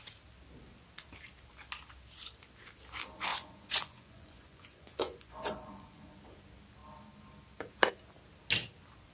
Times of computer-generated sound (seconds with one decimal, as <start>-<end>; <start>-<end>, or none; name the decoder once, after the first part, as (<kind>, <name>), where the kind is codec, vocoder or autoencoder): 3.3-6.2 (vocoder, Vocos)